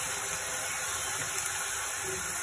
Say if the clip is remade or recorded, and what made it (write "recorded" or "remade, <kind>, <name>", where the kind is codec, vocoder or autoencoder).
recorded